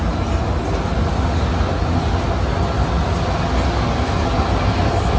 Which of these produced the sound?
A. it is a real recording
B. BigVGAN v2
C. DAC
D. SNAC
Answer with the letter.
A